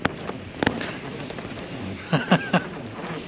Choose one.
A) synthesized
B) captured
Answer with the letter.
B